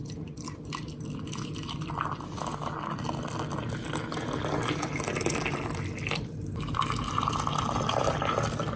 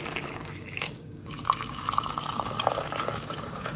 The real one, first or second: first